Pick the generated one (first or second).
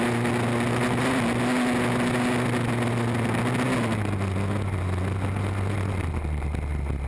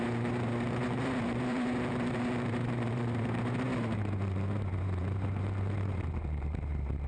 second